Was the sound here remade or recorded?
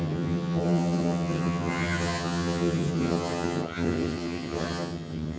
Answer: remade